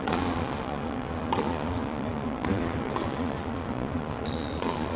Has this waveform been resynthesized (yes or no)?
yes